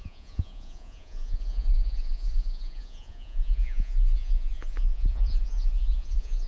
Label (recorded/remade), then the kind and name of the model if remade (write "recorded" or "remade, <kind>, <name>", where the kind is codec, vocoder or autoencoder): remade, vocoder, Vocos